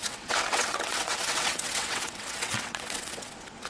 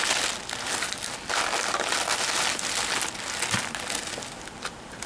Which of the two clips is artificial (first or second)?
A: first